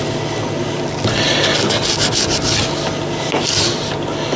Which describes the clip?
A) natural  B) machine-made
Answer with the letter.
A